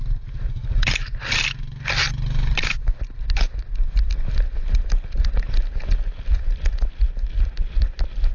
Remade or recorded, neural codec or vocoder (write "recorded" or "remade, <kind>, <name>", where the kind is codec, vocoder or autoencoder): recorded